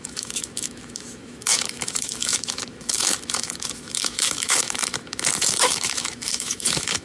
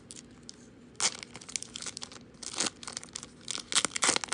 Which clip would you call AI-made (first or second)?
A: first